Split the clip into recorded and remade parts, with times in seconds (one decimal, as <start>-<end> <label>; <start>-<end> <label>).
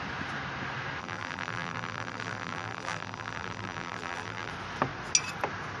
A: 0.0-1.0 recorded; 1.0-4.5 remade; 4.5-5.8 recorded